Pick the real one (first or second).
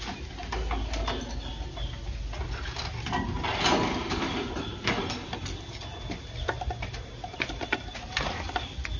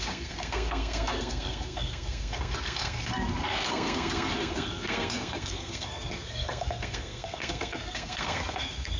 first